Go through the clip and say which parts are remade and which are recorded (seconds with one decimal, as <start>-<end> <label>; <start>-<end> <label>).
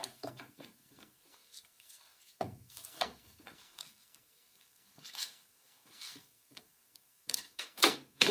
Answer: 0.0-8.3 remade